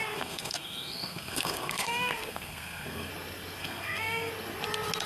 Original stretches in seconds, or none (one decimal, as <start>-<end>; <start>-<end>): 3.1-3.6; 4.3-5.1